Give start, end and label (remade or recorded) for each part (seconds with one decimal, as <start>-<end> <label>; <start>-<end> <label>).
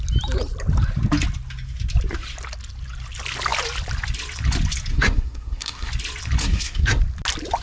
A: 0.0-4.9 recorded; 4.9-5.9 remade; 5.9-6.4 recorded; 6.4-7.0 remade; 7.0-7.6 recorded